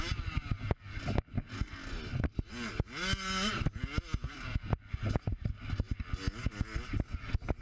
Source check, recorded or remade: recorded